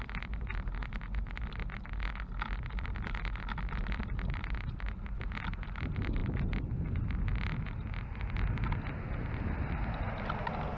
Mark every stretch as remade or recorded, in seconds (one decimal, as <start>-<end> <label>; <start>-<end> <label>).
0.0-10.8 recorded